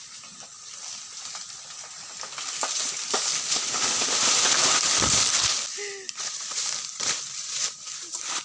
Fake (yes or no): yes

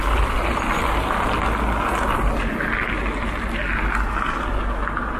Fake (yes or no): no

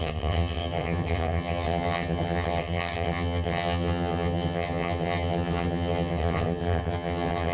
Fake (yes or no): yes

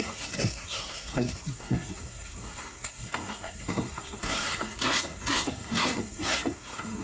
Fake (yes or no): yes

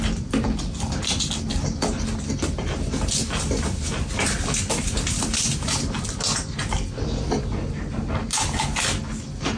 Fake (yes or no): no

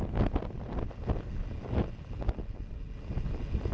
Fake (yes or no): no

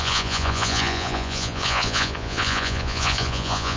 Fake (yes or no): yes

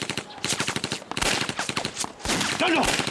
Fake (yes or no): no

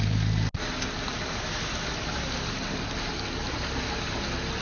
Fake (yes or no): no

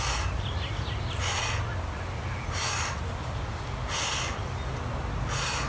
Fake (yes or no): no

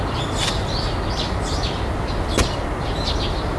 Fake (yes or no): no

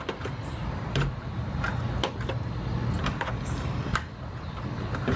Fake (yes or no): no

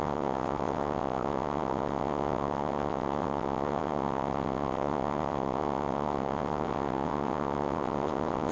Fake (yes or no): yes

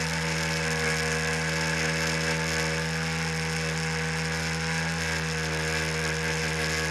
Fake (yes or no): no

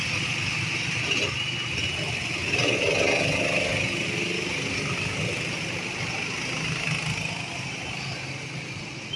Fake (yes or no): no